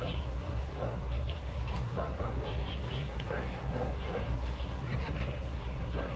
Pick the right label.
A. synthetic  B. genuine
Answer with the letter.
A